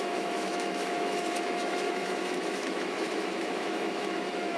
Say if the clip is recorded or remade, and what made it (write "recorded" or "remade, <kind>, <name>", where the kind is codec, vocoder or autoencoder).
remade, autoencoder, DAC-VAE